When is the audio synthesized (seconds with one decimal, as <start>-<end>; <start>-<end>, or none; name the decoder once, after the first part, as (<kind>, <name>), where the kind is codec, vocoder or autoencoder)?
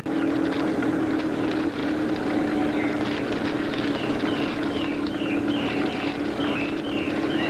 none